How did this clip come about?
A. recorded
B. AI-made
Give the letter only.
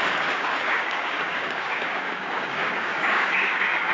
B